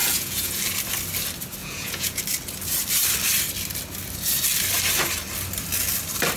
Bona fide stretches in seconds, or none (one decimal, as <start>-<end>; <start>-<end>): 0.6-1.6; 2.2-6.4